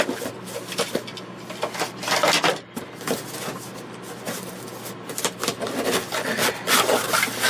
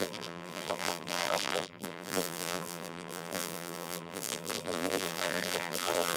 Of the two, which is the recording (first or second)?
first